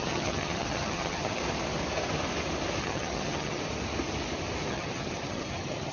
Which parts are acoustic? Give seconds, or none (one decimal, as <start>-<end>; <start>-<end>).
1.4-2.8; 3.6-4.7